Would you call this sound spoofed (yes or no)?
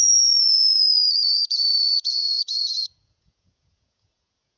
yes